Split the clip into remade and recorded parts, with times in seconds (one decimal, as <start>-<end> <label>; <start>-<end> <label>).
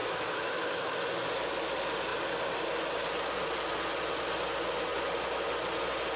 0.0-0.9 remade; 0.9-6.2 recorded